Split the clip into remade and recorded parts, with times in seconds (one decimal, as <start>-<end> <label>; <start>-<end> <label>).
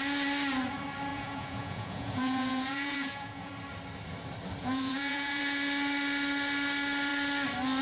0.0-1.1 recorded; 1.1-3.5 remade; 3.5-4.6 recorded; 4.6-5.4 remade; 5.4-7.8 recorded